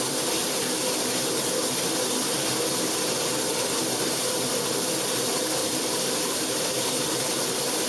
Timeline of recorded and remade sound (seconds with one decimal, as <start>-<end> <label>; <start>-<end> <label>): 0.0-0.4 recorded; 0.4-1.3 remade; 1.3-5.6 recorded; 5.6-7.2 remade; 7.2-7.9 recorded